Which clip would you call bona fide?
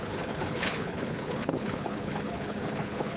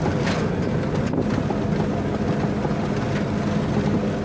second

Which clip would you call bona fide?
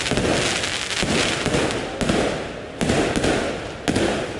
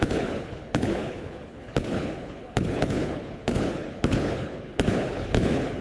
first